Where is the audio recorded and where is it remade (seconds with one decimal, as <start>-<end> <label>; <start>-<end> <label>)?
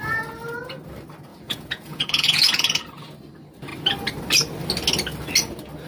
0.0-1.3 recorded; 1.3-2.8 remade; 2.8-5.9 recorded